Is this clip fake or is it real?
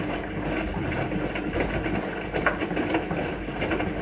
real